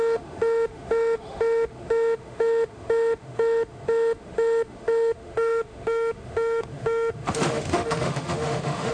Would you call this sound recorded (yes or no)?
no